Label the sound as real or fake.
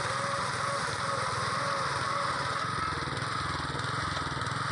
real